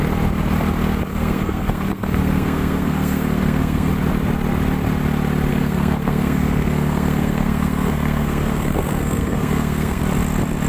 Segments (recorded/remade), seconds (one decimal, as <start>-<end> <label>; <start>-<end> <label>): 0.0-1.1 recorded; 1.1-3.9 remade; 3.9-5.5 recorded; 5.5-10.0 remade; 10.0-10.7 recorded